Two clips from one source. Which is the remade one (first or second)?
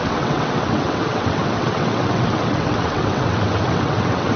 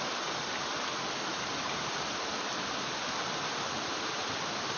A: first